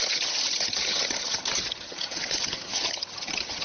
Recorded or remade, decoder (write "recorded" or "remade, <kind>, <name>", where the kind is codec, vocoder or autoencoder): remade, vocoder, HiFi-GAN